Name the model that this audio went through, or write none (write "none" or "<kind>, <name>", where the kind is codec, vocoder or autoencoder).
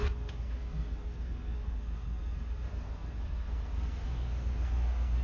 codec, SNAC